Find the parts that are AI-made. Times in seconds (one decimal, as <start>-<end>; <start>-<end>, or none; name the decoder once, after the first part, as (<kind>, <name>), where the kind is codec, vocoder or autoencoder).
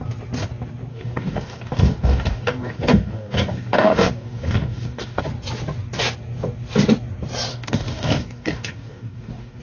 0.9-5.2 (codec, DAC); 7.5-9.6